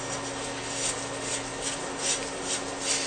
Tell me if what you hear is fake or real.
real